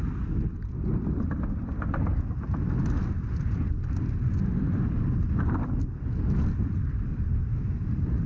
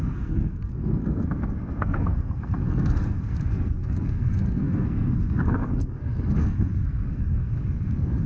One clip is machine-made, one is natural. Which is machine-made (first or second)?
second